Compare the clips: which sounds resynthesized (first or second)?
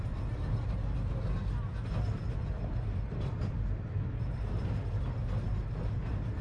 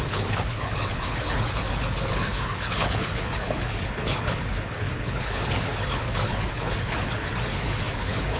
second